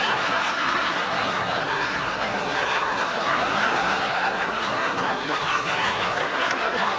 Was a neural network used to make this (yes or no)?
yes